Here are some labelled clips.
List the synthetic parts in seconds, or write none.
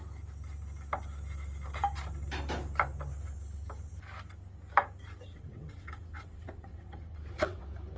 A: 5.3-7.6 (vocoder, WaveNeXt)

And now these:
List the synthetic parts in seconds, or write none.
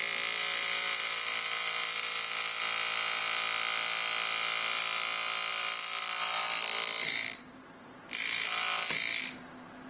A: 0.9-2.6 (vocoder, BigVGAN v2); 5.5-9.2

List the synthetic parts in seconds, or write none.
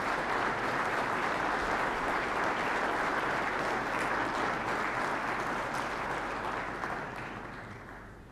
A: 0.0-1.2 (vocoder, BigVGAN v2); 5.5-8.3